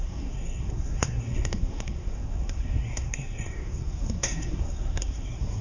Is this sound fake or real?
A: fake